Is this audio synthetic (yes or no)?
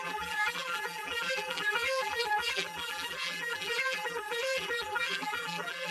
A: yes